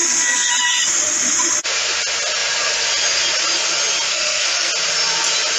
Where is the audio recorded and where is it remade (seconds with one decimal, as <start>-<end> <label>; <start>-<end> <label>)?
0.0-0.5 remade; 0.5-4.1 recorded; 4.1-4.7 remade; 4.7-5.6 recorded